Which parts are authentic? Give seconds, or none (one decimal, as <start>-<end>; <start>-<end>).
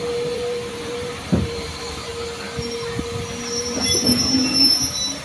2.1-3.6